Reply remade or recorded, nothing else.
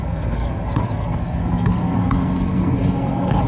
remade